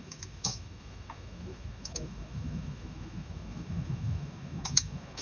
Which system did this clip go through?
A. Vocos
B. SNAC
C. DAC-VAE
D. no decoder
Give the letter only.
C